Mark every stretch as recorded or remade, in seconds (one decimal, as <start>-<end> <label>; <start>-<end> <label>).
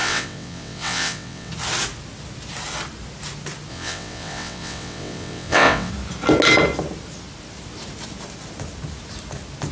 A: 0.0-1.5 remade; 1.5-3.7 recorded; 3.7-5.9 remade; 5.9-9.7 recorded